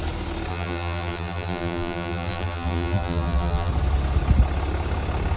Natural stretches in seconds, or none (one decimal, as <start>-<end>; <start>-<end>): 0.0-0.5; 3.7-5.4

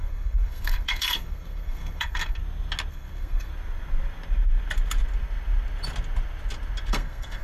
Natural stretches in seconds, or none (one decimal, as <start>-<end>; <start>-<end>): 2.4-2.9; 3.5-6.9

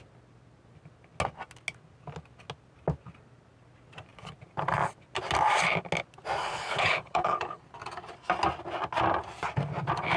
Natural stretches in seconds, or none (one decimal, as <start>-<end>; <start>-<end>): 0.0-6.4; 7.6-10.2

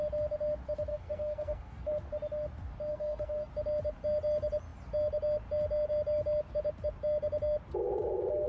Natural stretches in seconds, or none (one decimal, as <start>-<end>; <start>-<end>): 0.0-0.9; 1.9-2.9; 3.5-8.5

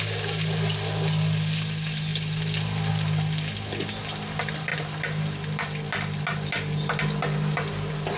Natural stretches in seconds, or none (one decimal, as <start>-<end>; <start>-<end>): 0.0-8.2

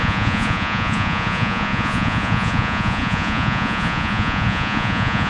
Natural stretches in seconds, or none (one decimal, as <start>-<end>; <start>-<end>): none

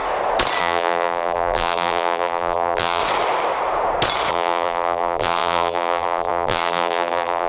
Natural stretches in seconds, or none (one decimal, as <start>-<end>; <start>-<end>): 0.0-0.6; 3.0-4.3